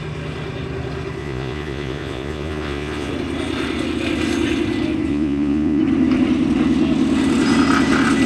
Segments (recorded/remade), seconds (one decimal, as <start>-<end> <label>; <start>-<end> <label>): 0.0-1.2 recorded; 1.2-3.1 remade; 3.1-5.1 recorded; 5.1-5.8 remade; 5.8-8.3 recorded